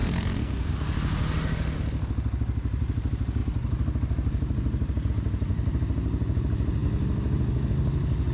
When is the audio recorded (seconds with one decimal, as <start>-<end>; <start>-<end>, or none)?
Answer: 0.7-8.3